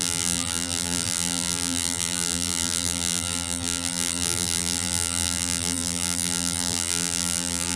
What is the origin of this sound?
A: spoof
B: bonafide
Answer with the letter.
A